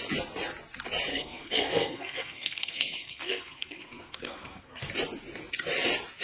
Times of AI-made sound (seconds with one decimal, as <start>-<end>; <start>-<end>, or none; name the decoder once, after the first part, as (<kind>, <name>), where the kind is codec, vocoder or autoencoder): 1.1-4.8 (codec, SNAC)